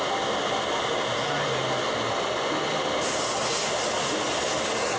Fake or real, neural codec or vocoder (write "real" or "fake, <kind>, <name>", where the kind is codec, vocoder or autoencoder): real